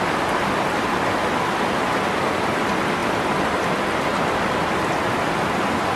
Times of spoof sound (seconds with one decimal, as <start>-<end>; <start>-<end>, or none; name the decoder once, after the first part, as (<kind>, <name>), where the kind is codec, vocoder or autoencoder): none